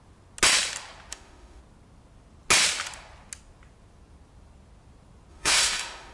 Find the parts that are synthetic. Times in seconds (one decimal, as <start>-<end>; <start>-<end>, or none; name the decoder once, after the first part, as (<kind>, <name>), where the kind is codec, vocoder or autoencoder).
1.1-1.6 (autoencoder, DAC-VAE); 5.3-6.1